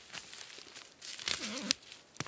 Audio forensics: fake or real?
real